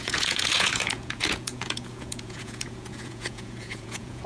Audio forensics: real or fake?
fake